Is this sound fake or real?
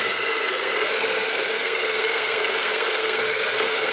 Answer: fake